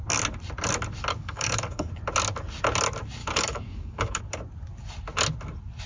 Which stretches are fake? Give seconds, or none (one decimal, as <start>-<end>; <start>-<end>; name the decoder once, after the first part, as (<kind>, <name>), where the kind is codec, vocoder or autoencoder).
1.1-1.9 (codec, DAC); 3.2-4.2